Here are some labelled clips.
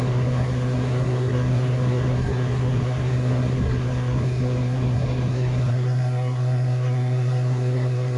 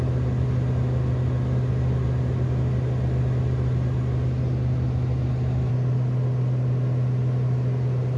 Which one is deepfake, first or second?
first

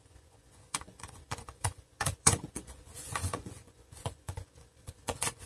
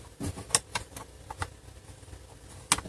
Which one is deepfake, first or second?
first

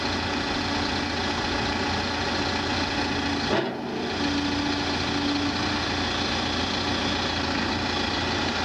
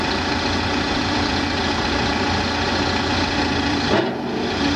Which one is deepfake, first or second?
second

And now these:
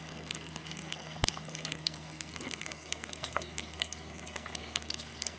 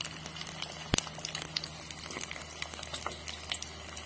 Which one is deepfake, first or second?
first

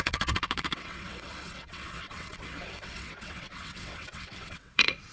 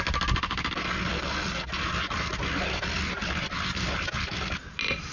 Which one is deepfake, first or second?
first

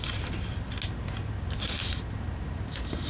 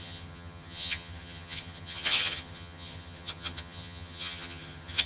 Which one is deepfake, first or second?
second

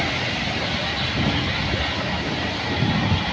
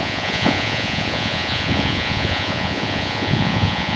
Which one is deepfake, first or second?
second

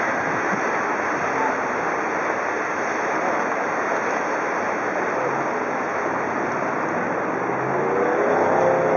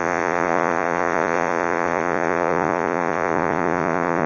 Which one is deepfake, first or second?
second